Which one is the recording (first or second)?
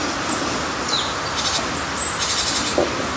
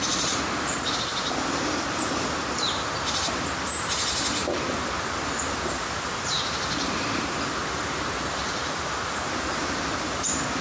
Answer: first